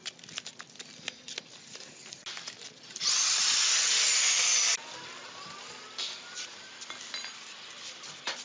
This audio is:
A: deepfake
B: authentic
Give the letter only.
B